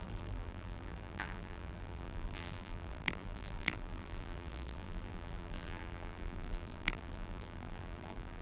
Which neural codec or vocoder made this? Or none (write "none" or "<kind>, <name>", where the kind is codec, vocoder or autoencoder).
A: vocoder, BigVGAN v2